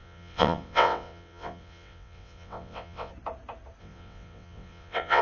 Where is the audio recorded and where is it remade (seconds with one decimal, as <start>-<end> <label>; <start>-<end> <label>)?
0.0-3.1 remade; 3.1-3.8 recorded; 3.8-5.2 remade